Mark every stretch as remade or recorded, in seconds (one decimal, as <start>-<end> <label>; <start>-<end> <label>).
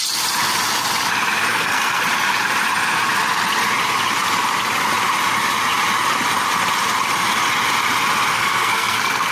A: 0.0-1.5 recorded; 1.5-2.0 remade; 2.0-8.3 recorded; 8.3-9.3 remade